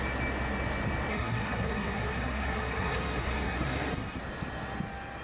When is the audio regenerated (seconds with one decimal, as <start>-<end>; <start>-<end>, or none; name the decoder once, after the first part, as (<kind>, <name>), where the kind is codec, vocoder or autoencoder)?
1.1-4.2 (codec, SNAC)